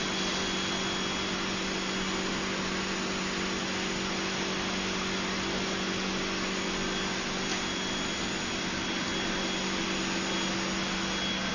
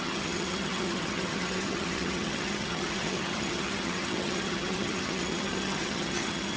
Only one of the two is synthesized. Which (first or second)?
second